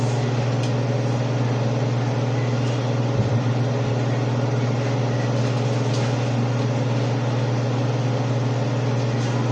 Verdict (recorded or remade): recorded